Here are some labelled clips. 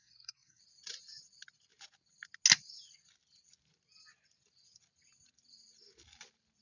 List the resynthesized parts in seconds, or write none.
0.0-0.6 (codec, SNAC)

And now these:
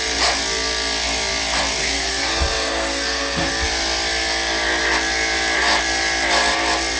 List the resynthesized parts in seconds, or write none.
1.8-3.5 (codec, SNAC)